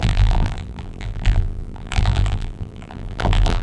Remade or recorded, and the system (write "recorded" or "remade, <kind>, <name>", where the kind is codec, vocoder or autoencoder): remade, vocoder, BigVGAN v2